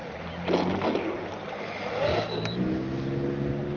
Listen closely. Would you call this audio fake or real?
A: real